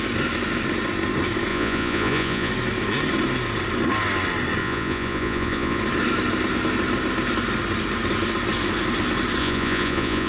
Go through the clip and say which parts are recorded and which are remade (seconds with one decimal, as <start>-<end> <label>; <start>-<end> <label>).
0.0-1.5 recorded; 1.5-2.5 remade; 2.5-4.6 recorded; 4.6-5.8 remade; 5.8-9.4 recorded; 9.4-10.3 remade